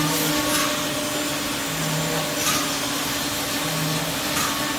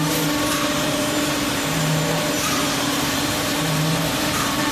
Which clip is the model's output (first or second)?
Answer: second